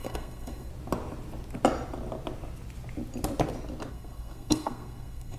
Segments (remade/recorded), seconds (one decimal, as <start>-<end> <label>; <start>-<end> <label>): 0.0-0.7 remade; 0.7-3.9 recorded; 3.9-5.4 remade